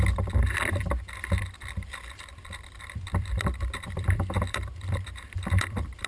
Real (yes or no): no